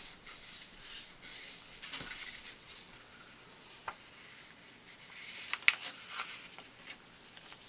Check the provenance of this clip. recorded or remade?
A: recorded